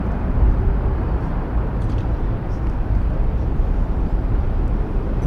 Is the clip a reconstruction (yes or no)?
yes